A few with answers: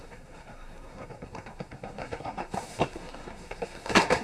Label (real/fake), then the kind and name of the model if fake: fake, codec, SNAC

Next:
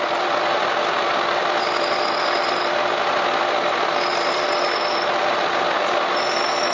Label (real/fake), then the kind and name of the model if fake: real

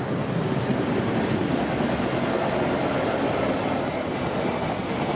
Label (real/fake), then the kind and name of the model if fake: real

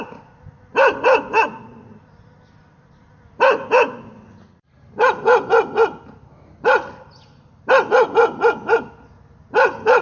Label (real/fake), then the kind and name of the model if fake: real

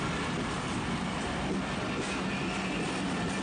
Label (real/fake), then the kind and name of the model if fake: real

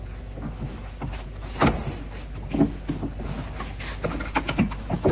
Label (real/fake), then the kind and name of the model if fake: real